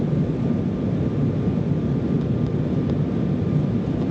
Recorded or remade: recorded